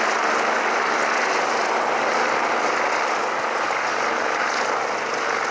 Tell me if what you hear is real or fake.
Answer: real